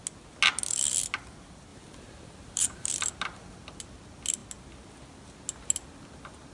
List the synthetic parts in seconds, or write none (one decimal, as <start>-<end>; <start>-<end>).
1.7-2.9